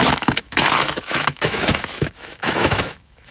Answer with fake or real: fake